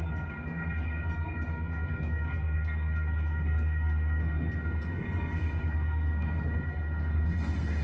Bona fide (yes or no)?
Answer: no